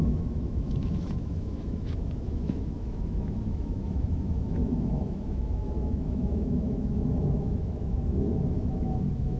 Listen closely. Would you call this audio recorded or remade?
remade